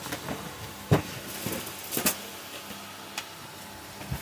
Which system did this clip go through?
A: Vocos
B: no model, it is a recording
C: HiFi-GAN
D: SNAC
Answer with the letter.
B